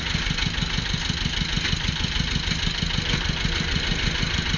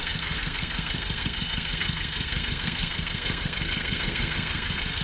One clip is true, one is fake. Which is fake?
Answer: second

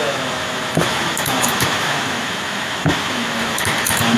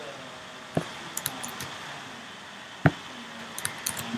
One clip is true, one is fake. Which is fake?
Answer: first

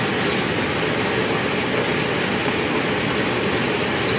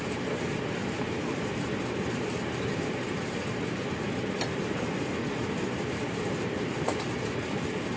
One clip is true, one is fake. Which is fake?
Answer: second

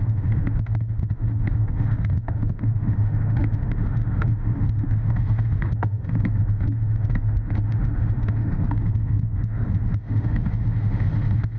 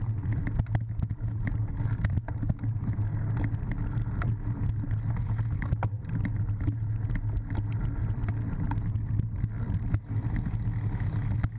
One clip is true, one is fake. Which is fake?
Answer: first